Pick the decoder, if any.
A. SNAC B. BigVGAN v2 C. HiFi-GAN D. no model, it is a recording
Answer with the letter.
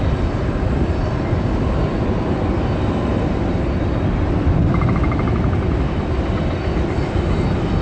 D